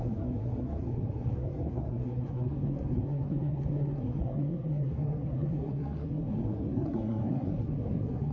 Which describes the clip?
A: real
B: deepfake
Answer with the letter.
B